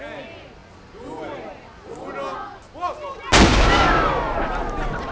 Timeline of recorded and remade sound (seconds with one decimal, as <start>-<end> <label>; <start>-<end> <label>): 0.0-5.1 recorded